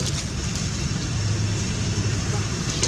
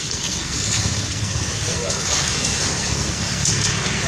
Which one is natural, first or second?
first